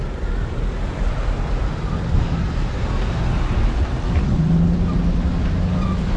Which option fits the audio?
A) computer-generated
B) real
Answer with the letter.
B